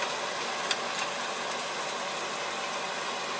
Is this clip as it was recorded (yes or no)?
yes